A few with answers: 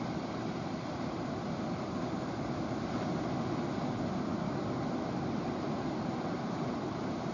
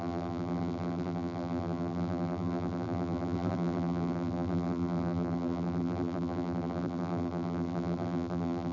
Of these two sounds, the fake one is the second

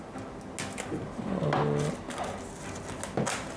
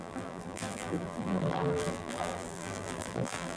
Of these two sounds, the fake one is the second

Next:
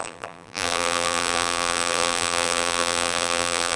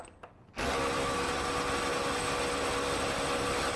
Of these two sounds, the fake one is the first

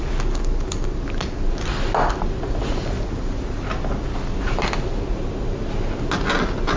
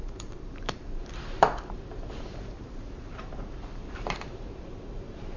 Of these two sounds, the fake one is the second